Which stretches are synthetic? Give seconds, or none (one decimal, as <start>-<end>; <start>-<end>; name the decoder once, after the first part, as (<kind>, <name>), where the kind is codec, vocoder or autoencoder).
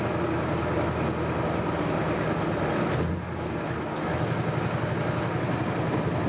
none